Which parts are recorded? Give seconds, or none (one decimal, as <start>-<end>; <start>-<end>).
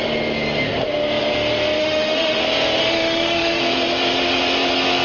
0.0-1.8; 2.4-2.8; 3.6-5.0